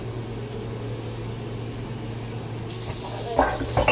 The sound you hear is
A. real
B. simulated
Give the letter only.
A